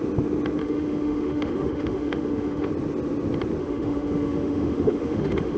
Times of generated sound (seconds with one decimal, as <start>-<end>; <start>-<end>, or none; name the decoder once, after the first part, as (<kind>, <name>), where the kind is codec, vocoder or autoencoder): 0.6-2.7 (autoencoder, DAC-VAE); 3.6-5.6